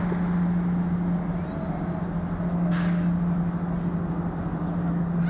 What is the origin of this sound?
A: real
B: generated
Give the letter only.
A